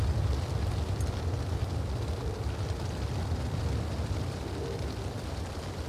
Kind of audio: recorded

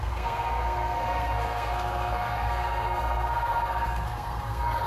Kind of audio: remade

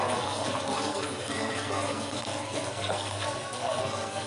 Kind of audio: remade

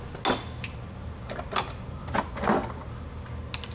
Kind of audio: recorded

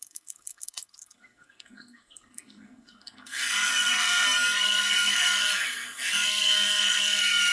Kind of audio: remade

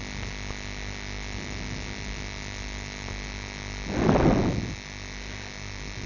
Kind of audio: recorded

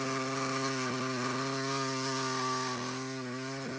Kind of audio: recorded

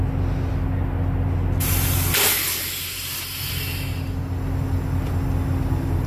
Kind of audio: recorded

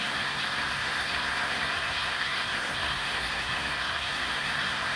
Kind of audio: remade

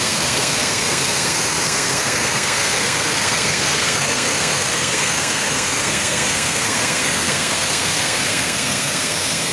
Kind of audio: remade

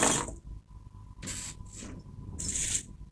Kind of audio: recorded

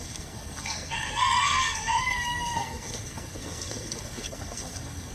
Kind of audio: remade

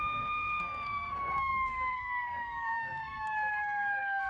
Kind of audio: remade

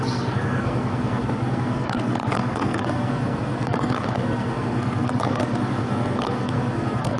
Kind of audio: remade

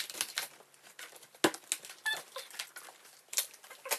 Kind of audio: recorded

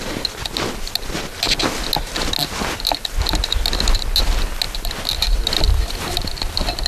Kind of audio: recorded